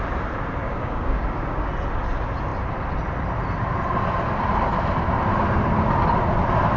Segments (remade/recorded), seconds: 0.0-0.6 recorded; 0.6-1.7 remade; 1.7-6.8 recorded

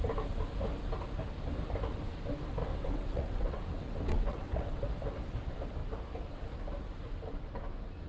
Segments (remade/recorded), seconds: 0.0-2.6 recorded; 2.6-4.9 remade; 4.9-8.1 recorded

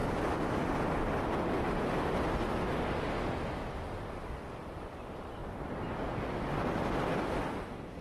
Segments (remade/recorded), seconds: 0.0-8.0 recorded

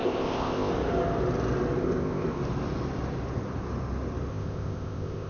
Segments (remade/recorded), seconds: 0.0-0.7 remade; 0.7-1.8 recorded; 1.8-2.4 remade; 2.4-4.3 recorded; 4.3-5.3 remade

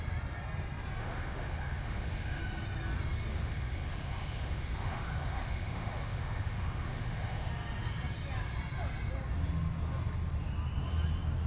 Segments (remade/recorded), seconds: 0.0-1.0 recorded; 1.0-2.4 remade; 2.4-3.3 recorded; 3.3-7.5 remade; 7.5-11.5 recorded